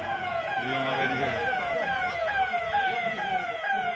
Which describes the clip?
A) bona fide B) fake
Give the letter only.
B